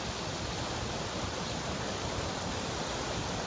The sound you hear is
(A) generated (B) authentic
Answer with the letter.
B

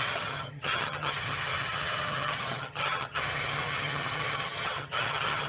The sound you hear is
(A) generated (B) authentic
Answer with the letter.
A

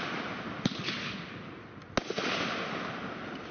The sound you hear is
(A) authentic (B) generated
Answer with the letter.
A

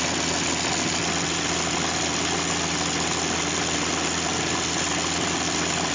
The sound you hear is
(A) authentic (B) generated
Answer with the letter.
A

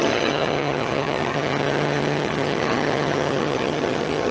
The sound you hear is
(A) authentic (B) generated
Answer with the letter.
B